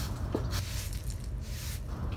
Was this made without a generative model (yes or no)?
yes